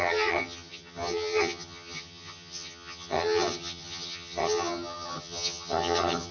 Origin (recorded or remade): remade